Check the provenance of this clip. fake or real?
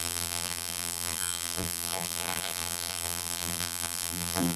fake